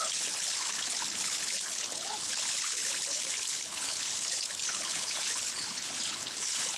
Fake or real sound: fake